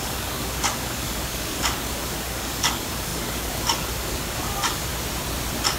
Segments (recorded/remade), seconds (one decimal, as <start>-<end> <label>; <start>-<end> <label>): 0.0-4.9 remade; 4.9-5.8 recorded